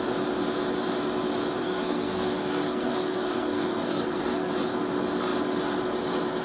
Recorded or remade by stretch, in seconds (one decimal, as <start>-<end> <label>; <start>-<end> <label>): 0.0-1.6 recorded; 1.6-4.5 remade; 4.5-6.4 recorded